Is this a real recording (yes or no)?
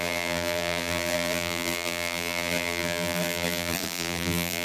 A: no